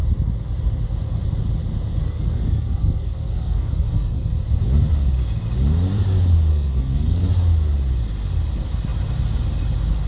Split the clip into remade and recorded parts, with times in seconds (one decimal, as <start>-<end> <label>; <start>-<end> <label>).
0.0-2.0 recorded; 2.0-4.3 remade; 4.3-6.5 recorded; 6.5-7.3 remade; 7.3-10.1 recorded